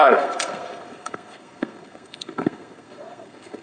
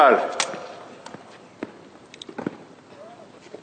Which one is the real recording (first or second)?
second